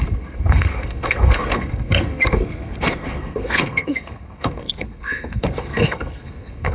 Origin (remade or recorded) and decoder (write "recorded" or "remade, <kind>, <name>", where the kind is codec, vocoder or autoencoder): remade, codec, SNAC